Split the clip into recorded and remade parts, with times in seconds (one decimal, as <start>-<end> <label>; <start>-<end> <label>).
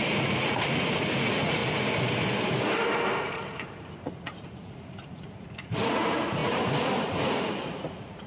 0.0-1.6 remade; 1.6-3.2 recorded; 3.2-8.3 remade